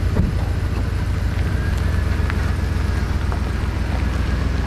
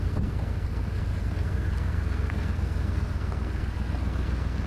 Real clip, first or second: first